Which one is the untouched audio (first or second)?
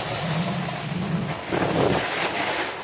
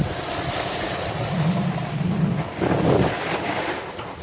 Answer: first